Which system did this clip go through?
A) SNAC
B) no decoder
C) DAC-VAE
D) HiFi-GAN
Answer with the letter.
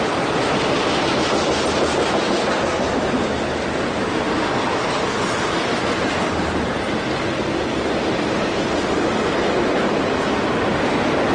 B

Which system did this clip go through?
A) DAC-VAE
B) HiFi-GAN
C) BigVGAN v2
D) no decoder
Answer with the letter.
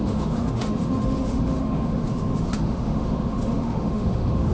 A